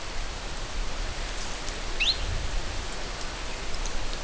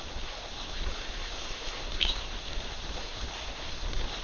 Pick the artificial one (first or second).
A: second